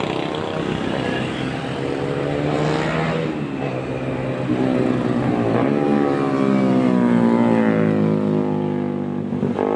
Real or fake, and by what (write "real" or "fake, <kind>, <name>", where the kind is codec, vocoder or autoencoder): real